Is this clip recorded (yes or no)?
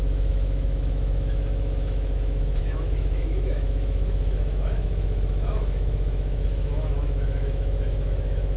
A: no